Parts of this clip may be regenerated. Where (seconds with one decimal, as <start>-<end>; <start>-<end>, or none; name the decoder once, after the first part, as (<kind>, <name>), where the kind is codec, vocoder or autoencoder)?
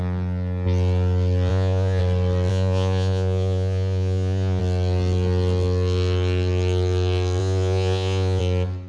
1.5-2.0 (vocoder, Vocos); 2.5-4.6; 7.4-8.4